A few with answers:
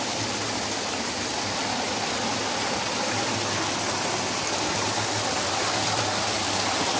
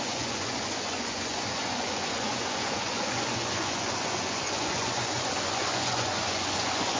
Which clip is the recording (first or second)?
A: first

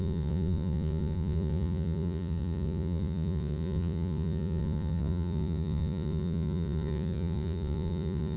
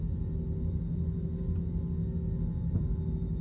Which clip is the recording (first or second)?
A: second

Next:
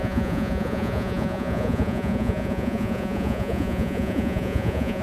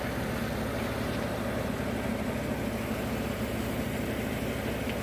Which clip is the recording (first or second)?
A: second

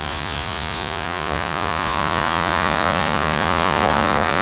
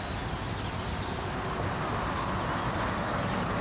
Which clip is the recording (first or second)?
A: second